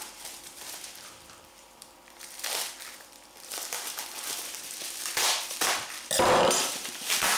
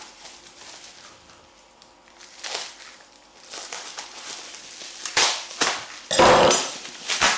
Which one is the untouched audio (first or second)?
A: second